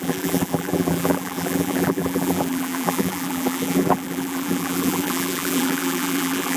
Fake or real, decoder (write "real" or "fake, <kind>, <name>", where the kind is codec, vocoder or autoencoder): fake, vocoder, BigVGAN v2